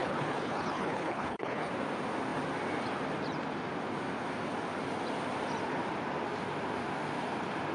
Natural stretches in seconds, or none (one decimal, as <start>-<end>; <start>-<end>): 1.7-7.7